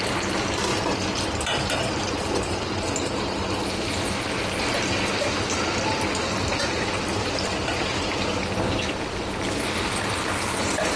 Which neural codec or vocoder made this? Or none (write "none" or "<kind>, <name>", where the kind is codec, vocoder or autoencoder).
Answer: none